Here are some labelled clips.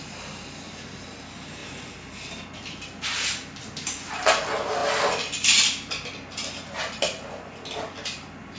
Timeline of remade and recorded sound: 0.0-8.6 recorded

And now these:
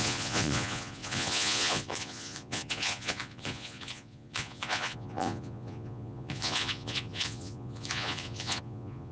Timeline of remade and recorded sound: 0.0-9.1 remade

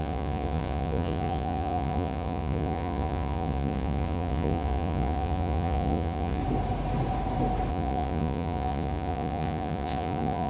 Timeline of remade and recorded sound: 0.0-6.4 remade; 6.4-7.7 recorded; 7.7-10.5 remade

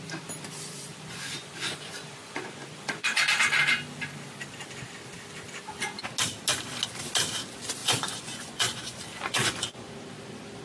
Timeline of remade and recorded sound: 0.0-0.9 recorded; 0.9-3.2 remade; 3.2-7.8 recorded; 7.8-9.9 remade; 9.9-10.6 recorded

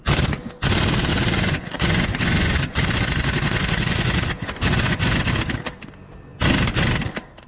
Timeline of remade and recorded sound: 0.0-1.1 recorded; 1.1-5.3 remade; 5.3-7.5 recorded